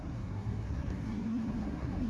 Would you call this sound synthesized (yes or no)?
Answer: yes